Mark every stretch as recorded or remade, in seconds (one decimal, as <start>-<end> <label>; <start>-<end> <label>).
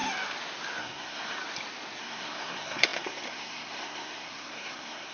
0.0-0.8 recorded; 0.8-1.4 remade; 1.4-2.0 recorded; 2.0-5.1 remade